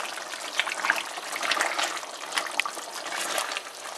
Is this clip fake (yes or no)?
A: no